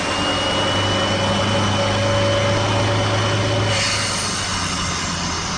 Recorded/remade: recorded